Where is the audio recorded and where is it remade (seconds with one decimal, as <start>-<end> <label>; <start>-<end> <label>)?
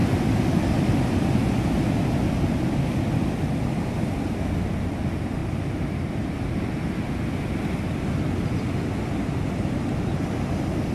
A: 0.0-5.4 recorded; 5.4-6.8 remade; 6.8-10.9 recorded